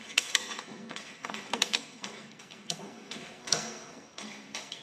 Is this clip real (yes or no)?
no